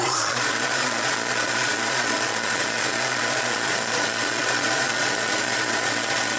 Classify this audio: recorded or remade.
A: remade